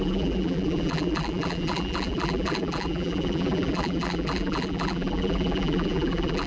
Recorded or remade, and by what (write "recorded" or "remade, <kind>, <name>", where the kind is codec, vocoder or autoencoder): remade, vocoder, BigVGAN v2